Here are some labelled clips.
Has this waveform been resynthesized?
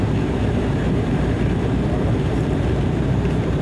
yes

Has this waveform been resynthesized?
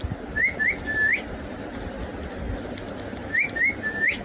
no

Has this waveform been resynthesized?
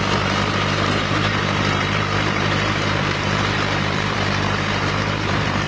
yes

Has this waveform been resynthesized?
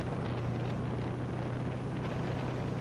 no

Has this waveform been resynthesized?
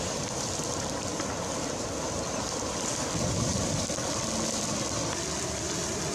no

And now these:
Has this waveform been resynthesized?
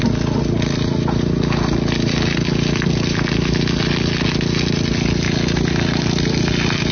no